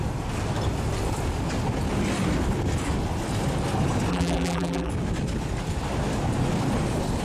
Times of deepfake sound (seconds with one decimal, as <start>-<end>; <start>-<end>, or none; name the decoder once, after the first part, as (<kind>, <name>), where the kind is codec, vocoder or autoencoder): 4.1-4.9 (vocoder, BigVGAN v2)